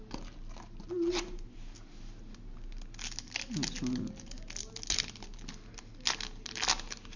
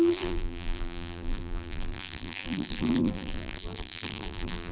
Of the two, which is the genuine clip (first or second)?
first